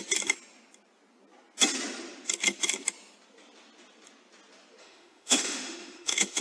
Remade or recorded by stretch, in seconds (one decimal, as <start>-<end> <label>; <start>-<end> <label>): 0.0-4.8 recorded; 4.8-6.4 remade